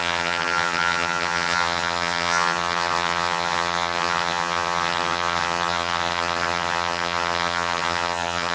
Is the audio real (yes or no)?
no